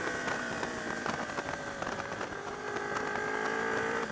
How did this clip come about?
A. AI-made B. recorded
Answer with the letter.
A